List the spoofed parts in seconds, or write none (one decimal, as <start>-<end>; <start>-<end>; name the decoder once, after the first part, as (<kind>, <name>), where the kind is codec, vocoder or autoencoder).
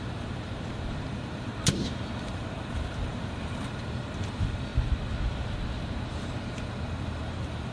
0.0-1.5 (vocoder, BigVGAN v2); 2.2-4.7; 6.1-7.7